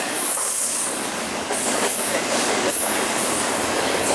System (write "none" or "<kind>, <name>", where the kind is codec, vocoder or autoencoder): codec, DAC